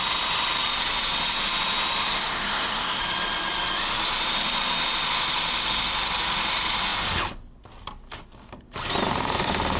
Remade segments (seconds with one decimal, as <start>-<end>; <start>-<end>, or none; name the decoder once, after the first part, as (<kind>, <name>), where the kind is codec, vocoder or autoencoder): 2.0-3.0 (codec, SNAC)

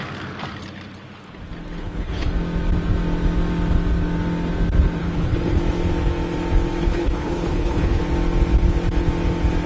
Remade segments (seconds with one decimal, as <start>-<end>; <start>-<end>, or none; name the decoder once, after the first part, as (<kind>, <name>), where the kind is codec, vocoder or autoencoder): 1.8-2.3 (codec, HILCodec); 5.0-5.6; 6.8-8.0

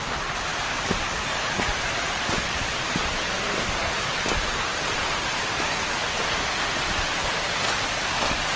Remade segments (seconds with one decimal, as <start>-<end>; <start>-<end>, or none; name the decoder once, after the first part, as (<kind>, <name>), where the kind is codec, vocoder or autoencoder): 0.5-2.9 (vocoder, BigVGAN v2)